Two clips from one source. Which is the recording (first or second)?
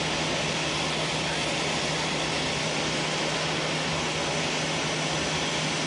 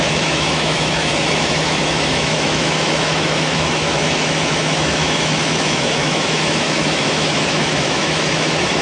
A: first